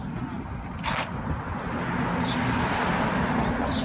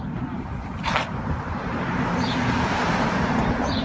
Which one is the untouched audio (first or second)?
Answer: first